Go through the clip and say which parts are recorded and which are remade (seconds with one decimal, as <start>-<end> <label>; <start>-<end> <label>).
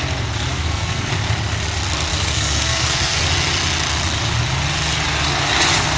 0.0-0.5 recorded; 0.5-1.1 remade; 1.1-2.1 recorded; 2.1-3.3 remade; 3.3-6.0 recorded